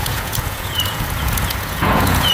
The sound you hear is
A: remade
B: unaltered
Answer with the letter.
A